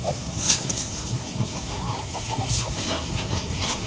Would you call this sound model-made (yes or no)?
yes